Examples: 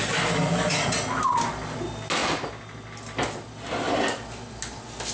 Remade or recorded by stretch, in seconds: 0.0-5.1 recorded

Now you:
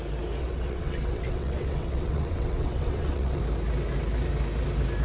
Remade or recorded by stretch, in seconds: 0.0-0.4 recorded; 0.4-3.4 remade; 3.4-5.0 recorded

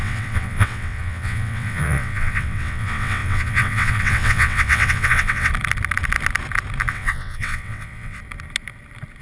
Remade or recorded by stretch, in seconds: 0.0-5.5 remade; 5.5-6.9 recorded; 6.9-8.2 remade; 8.2-9.2 recorded

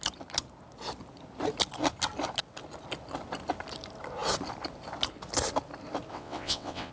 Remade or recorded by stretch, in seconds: 0.0-6.1 recorded; 6.1-6.9 remade

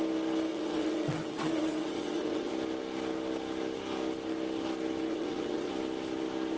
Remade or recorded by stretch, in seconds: 0.0-0.5 recorded; 0.5-2.5 remade; 2.5-5.1 recorded; 5.1-5.7 remade; 5.7-6.6 recorded

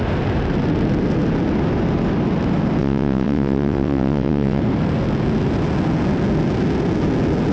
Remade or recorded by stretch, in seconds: 0.0-2.8 recorded; 2.8-4.6 remade; 4.6-7.5 recorded